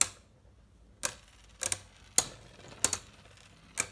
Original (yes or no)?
yes